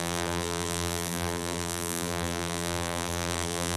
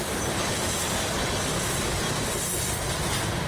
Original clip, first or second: second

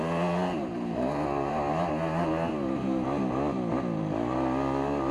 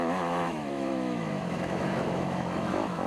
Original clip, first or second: first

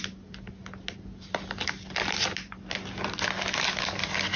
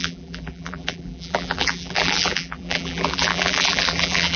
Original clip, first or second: first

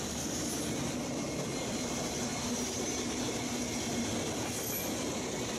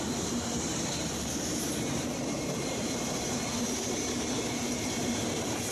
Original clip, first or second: first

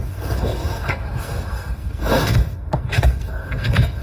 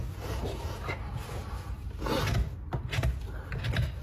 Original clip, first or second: second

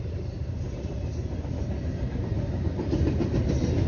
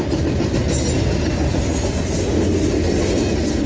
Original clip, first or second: second